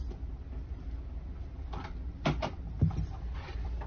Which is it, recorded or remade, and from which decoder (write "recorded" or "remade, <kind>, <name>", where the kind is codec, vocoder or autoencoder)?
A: remade, vocoder, BigVGAN v2